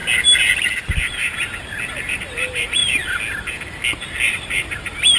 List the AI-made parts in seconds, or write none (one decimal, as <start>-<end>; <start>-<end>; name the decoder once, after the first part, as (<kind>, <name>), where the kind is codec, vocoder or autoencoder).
1.9-2.8 (vocoder, BigVGAN v2); 4.3-5.2